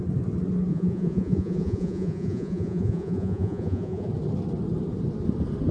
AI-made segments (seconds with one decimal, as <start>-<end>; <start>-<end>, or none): 0.7-4.1